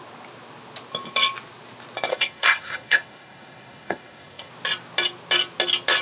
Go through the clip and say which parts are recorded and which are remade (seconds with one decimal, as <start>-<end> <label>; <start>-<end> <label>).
0.0-2.1 recorded; 2.1-4.5 remade; 4.5-6.0 recorded